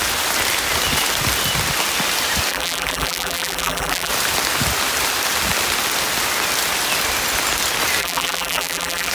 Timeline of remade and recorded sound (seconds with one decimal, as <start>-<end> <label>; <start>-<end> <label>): 0.0-2.5 recorded; 2.5-4.1 remade; 4.1-8.0 recorded; 8.0-9.1 remade